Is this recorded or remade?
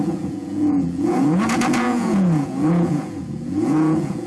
remade